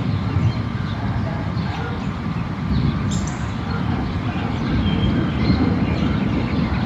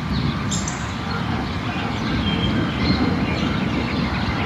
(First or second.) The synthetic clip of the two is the first